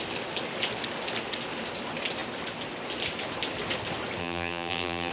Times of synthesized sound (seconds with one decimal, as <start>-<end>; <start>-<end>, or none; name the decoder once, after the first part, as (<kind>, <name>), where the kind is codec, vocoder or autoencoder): 4.2-5.1 (vocoder, BigVGAN v2)